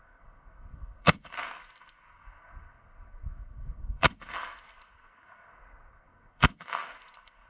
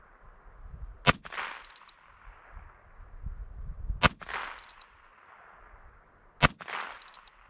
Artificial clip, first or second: first